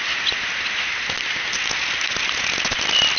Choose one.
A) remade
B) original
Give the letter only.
B